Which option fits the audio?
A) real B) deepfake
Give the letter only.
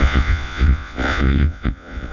B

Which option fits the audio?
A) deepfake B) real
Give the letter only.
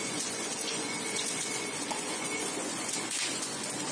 A